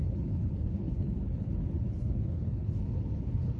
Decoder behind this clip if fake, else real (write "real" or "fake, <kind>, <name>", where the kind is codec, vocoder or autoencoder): fake, codec, HILCodec